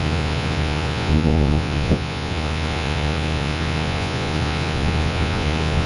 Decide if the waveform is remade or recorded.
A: remade